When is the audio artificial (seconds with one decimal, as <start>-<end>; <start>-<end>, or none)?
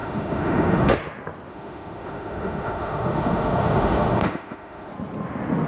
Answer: 0.0-0.9; 1.5-4.9